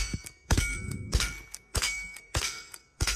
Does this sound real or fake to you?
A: fake